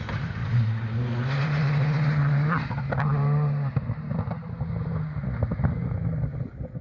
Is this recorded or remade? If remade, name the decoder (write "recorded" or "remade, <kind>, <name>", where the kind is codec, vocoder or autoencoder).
recorded